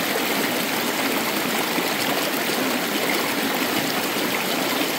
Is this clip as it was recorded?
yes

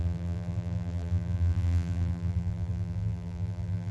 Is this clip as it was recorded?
no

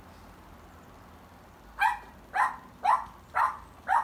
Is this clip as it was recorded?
yes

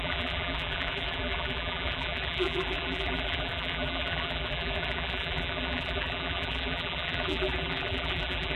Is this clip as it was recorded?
no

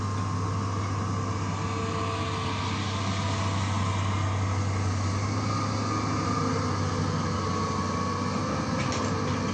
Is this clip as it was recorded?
yes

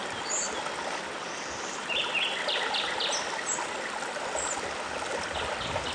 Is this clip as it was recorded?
yes